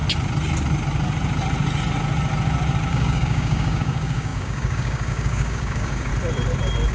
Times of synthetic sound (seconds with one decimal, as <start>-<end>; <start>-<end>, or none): 2.9-6.1